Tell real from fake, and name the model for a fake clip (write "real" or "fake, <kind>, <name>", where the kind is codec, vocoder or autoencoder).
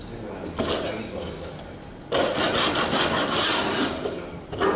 real